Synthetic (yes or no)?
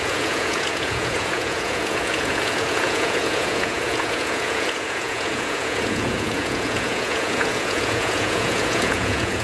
yes